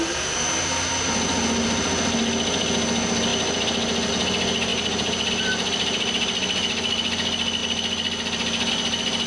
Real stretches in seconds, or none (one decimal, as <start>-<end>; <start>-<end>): 0.0-4.7; 5.3-9.3